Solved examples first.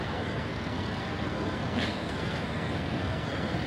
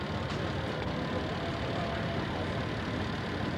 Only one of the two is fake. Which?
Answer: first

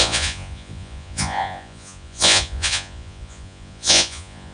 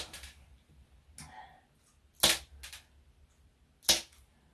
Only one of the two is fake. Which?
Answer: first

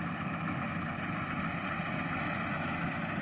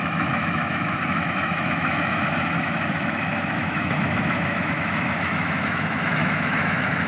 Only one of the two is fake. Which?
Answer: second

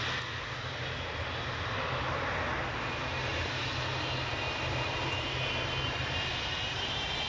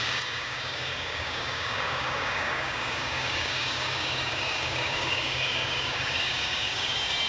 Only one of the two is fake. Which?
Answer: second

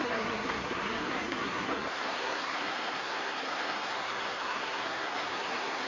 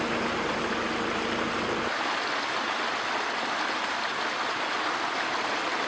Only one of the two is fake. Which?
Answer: first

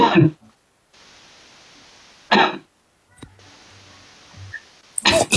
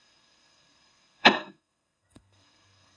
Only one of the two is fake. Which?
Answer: second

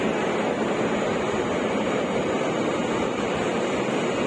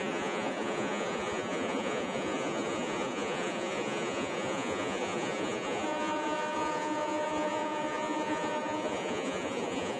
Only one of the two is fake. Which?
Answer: second